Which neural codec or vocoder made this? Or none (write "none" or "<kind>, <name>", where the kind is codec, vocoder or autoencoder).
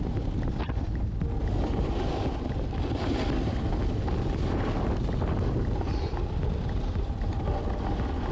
none